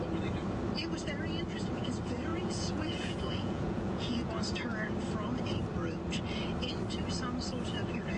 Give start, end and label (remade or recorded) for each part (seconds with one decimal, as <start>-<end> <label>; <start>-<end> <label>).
0.0-2.3 recorded; 2.3-4.3 remade; 4.3-8.2 recorded